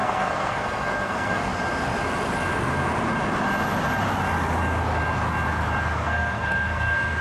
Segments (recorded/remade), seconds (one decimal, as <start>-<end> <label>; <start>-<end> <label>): 0.0-1.5 remade; 1.5-5.8 recorded; 5.8-7.2 remade